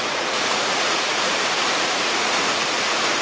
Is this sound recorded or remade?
remade